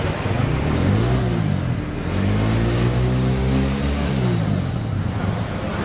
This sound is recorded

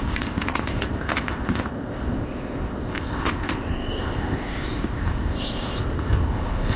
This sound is remade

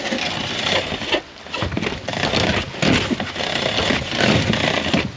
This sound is recorded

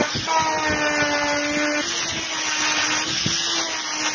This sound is recorded